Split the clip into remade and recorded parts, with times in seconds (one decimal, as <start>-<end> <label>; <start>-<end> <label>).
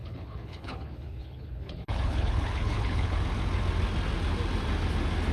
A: 0.0-3.2 remade; 3.2-5.3 recorded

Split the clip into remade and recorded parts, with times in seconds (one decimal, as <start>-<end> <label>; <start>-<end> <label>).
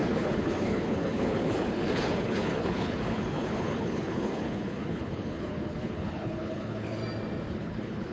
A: 0.0-7.0 remade; 7.0-7.5 recorded; 7.5-8.1 remade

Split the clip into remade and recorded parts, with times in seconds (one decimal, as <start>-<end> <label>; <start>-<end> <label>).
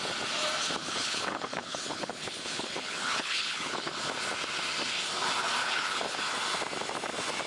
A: 0.0-0.8 recorded; 0.8-4.0 remade; 4.0-5.6 recorded; 5.6-6.2 remade; 6.2-7.5 recorded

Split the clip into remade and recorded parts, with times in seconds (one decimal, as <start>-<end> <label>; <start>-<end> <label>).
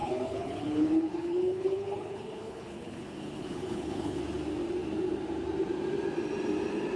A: 0.0-4.2 remade; 4.2-7.0 recorded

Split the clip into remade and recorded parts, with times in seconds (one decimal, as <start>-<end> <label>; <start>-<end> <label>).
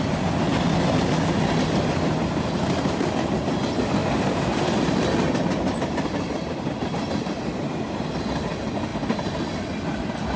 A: 0.0-10.4 recorded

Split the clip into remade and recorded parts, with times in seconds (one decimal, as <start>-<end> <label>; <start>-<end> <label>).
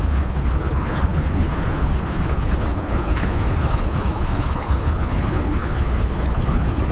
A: 0.0-6.9 remade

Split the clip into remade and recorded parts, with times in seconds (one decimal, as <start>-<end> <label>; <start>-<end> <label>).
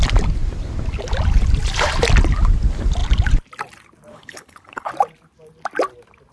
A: 0.0-4.1 recorded; 4.1-4.9 remade; 4.9-6.3 recorded